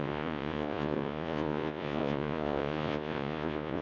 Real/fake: fake